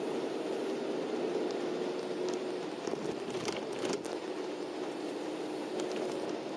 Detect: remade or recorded recorded